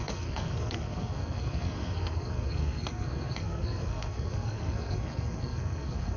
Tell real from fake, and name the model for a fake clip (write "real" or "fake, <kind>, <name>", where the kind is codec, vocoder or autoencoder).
fake, codec, SNAC